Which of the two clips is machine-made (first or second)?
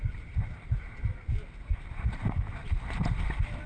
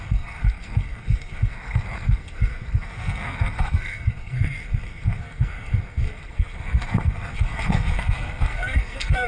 second